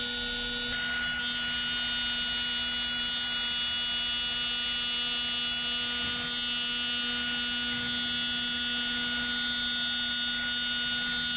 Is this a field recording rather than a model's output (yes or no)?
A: yes